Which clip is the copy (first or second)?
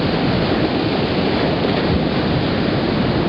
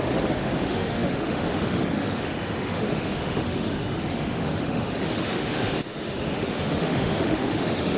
second